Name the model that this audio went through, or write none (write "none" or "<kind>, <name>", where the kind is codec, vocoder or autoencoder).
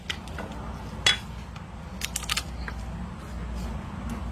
none